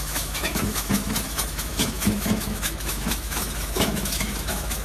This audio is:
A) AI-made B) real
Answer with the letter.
A